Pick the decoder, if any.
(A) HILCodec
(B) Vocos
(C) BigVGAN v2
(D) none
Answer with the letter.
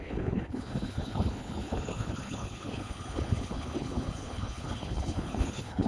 A